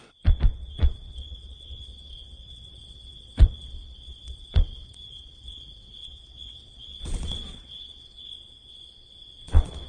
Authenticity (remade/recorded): remade